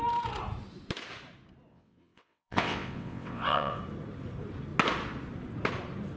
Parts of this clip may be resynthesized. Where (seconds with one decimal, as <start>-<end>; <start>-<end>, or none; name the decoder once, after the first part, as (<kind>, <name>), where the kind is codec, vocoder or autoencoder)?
1.7-3.8 (vocoder, WaveNeXt)